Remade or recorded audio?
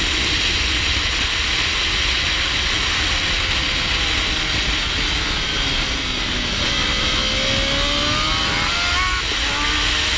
recorded